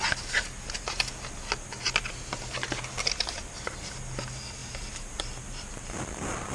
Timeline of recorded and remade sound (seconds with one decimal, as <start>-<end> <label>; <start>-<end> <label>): 0.0-6.5 recorded